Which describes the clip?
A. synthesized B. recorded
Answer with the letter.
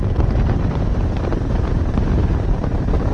A